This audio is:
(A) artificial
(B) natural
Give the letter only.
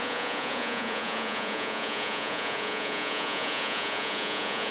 A